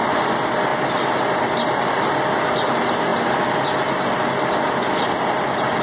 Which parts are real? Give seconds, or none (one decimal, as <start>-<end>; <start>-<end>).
0.0-5.8